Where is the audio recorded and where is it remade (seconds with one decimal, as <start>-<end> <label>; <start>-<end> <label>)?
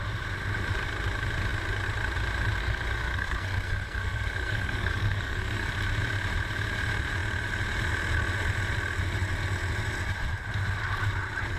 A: 0.0-2.6 recorded; 2.6-5.7 remade; 5.7-11.6 recorded